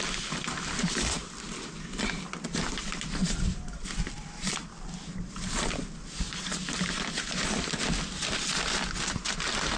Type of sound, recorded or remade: recorded